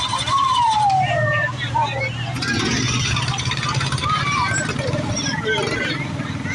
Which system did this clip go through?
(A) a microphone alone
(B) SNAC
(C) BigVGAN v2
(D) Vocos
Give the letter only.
C